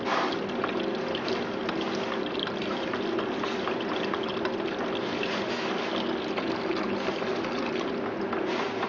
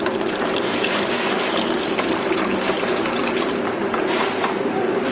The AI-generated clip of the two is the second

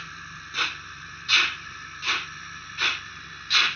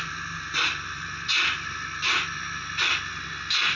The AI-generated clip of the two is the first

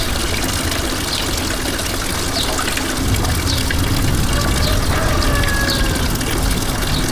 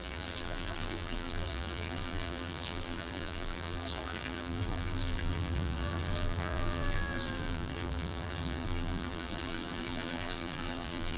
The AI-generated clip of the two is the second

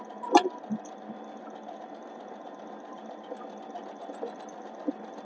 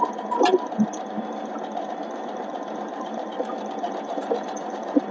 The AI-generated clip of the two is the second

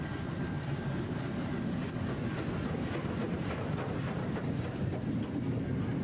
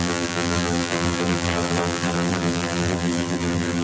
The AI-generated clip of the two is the second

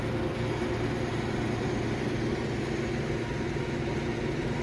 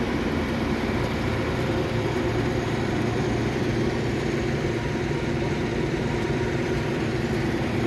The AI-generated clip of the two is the second